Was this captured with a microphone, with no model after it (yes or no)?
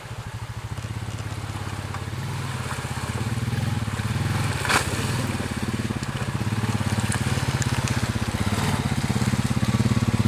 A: yes